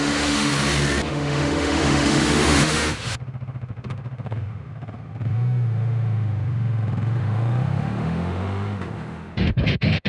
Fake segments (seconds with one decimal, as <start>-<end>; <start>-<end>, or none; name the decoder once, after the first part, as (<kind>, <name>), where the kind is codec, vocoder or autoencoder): 0.0-0.5 (autoencoder, DAC-VAE); 1.1-10.1